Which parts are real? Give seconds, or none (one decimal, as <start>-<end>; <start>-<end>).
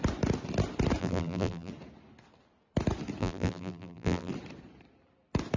0.0-1.0; 1.7-3.2; 4.3-5.6